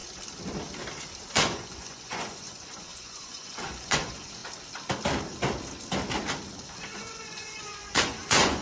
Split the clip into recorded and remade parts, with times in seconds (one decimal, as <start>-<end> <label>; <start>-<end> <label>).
0.0-1.3 recorded; 1.3-4.4 remade; 4.4-6.7 recorded; 6.7-8.6 remade